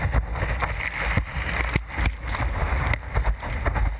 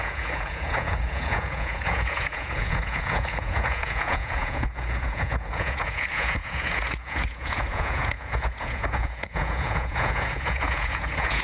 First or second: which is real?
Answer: first